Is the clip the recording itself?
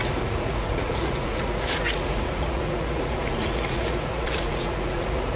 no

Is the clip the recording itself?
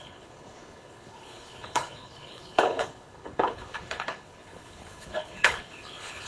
no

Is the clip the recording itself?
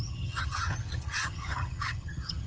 no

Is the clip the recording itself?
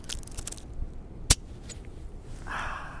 yes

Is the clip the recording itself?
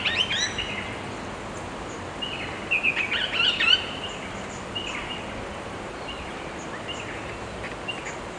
yes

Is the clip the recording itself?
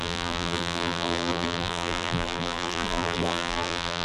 no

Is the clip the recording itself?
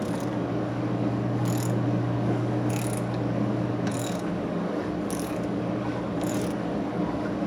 no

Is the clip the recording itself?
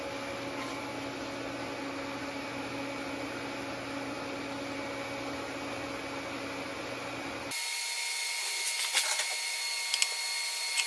yes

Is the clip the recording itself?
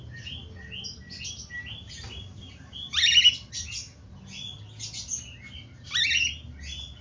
yes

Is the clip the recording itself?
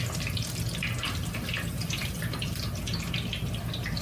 yes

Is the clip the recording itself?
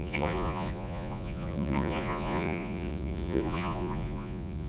no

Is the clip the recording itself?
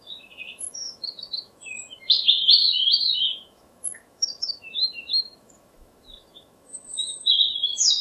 no